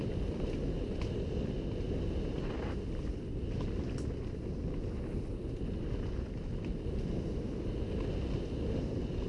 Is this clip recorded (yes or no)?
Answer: yes